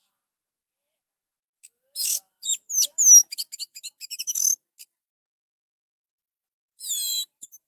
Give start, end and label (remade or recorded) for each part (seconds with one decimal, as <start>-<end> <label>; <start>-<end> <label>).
0.0-7.7 remade